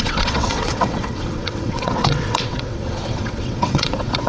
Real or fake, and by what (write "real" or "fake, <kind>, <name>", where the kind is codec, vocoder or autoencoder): fake, vocoder, WaveNeXt